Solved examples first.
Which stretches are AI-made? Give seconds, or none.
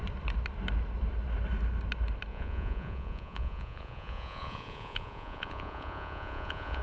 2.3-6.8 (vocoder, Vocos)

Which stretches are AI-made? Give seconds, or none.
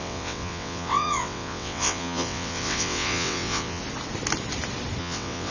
0.0-3.8 (vocoder, WaveNeXt); 5.0-5.5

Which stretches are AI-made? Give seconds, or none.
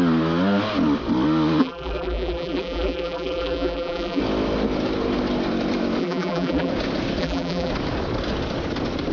1.6-4.2 (vocoder, BigVGAN v2); 6.0-6.7; 7.2-7.7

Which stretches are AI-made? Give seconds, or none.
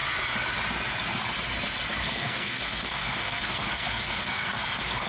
2.0-5.1 (codec, SNAC)